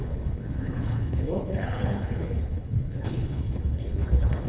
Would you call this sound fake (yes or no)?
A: yes